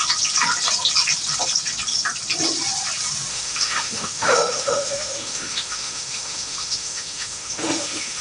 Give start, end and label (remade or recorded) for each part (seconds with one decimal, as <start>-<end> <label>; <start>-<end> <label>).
0.0-3.3 recorded; 3.3-8.2 remade